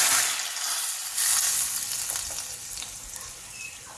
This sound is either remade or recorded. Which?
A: recorded